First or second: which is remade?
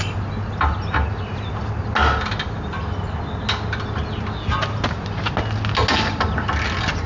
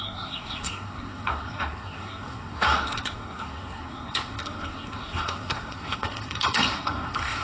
second